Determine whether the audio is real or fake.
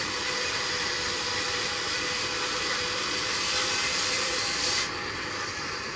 fake